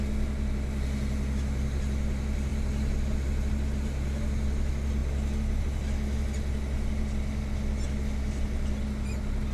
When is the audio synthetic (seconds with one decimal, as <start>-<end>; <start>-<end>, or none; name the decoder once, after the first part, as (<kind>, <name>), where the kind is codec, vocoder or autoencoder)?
none

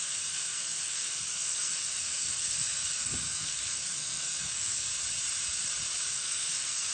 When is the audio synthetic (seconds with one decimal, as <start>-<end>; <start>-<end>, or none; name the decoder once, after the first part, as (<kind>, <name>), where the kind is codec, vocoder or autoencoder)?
0.0-4.9 (codec, SNAC); 6.1-6.9

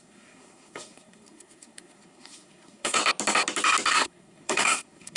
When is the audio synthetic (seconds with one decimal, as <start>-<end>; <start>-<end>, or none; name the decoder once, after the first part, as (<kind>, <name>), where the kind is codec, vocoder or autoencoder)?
0.0-3.0 (codec, SNAC); 3.9-5.2

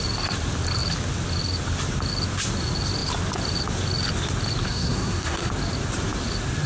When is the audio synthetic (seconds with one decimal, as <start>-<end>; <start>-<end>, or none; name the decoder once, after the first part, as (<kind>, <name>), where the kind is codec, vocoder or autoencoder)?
4.6-5.5 (codec, SNAC)

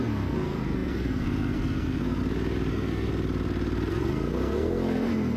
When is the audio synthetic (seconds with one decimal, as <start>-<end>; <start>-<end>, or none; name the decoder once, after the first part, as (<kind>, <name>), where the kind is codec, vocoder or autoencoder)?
0.0-2.2 (codec, SNAC); 2.7-3.1; 3.9-5.4